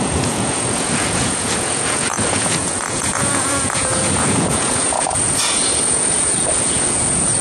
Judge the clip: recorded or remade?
remade